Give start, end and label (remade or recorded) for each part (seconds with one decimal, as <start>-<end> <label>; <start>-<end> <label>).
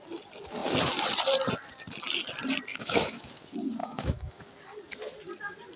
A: 0.0-2.7 recorded; 2.7-3.3 remade; 3.3-3.8 recorded; 3.8-4.4 remade; 4.4-5.8 recorded